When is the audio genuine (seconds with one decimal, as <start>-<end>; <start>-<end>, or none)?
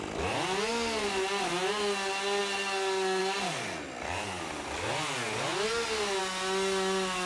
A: 0.0-7.3